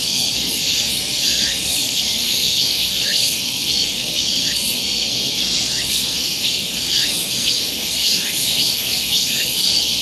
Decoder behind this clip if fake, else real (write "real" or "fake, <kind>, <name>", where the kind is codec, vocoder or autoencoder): fake, codec, SNAC